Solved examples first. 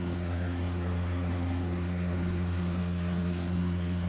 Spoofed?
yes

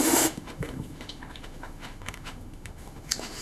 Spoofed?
yes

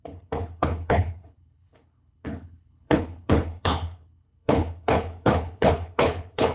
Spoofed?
yes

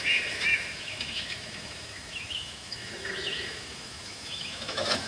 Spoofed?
yes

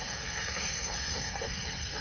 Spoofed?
yes